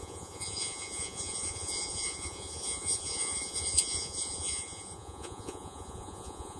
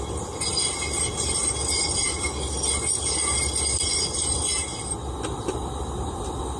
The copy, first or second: first